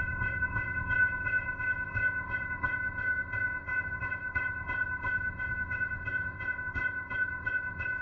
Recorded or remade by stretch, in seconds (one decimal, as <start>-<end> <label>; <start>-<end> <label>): 0.0-8.0 remade